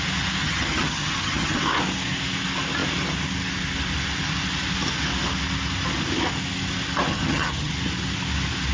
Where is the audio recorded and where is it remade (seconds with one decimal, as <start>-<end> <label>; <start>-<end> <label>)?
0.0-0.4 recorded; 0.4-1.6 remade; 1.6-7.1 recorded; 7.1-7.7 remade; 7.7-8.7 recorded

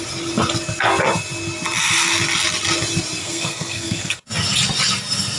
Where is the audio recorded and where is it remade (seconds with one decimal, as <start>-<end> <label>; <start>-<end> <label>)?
0.0-3.2 recorded; 3.2-4.3 remade; 4.3-5.4 recorded

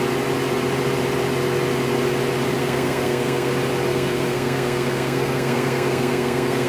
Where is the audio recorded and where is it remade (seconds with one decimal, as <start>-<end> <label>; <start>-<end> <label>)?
0.0-2.6 recorded; 2.6-3.5 remade; 3.5-3.9 recorded; 3.9-6.7 remade

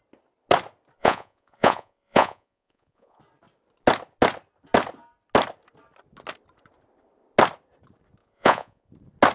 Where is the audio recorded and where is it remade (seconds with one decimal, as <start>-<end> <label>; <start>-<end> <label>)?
0.0-1.0 recorded; 1.0-3.2 remade; 3.2-8.2 recorded; 8.2-8.9 remade; 8.9-9.3 recorded